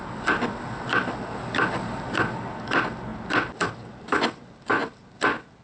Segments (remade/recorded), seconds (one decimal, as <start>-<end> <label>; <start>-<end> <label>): 0.0-5.6 recorded